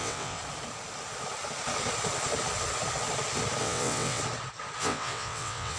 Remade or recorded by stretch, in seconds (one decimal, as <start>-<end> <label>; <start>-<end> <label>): 0.0-0.4 remade; 0.4-3.6 recorded; 3.6-4.2 remade; 4.2-4.8 recorded; 4.8-5.8 remade